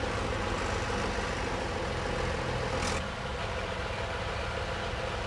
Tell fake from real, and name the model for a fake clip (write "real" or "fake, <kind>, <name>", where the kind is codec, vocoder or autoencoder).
real